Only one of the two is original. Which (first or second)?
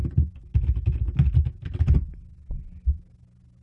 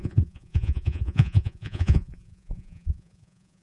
first